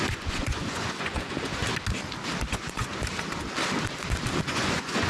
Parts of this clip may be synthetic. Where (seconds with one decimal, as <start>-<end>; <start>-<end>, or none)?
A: 0.0-1.6; 2.5-2.9; 4.4-5.1